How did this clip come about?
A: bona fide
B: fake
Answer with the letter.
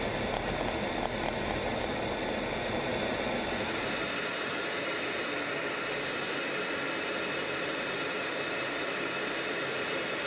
A